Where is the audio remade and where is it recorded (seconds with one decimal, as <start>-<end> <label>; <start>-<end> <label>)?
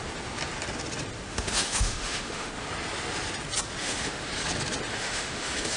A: 0.0-1.3 recorded; 1.3-2.5 remade; 2.5-3.8 recorded; 3.8-4.3 remade; 4.3-4.9 recorded; 4.9-5.8 remade